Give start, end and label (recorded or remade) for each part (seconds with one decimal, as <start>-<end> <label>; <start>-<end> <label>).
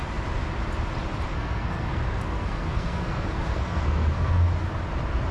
0.0-1.3 recorded; 1.3-4.5 remade; 4.5-5.3 recorded